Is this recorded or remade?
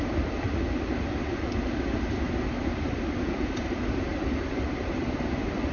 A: recorded